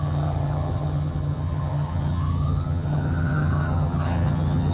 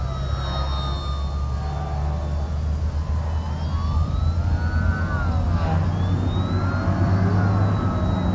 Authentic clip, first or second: second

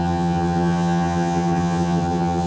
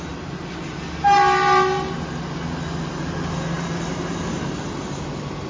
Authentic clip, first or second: second